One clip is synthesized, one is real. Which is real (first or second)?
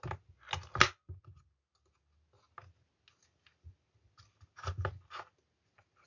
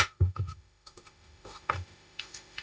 first